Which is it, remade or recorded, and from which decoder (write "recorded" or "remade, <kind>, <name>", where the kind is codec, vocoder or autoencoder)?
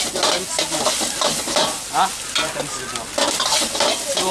recorded